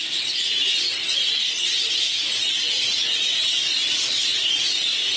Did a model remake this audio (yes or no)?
no